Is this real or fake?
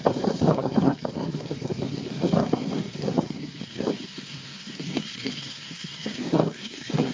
fake